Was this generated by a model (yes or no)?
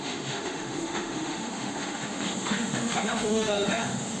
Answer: yes